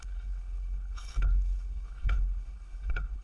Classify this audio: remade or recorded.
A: remade